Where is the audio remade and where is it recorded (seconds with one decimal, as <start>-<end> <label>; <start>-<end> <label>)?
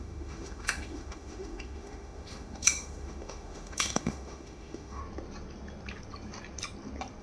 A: 0.0-5.0 remade; 5.0-7.2 recorded